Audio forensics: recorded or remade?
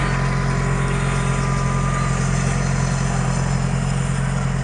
recorded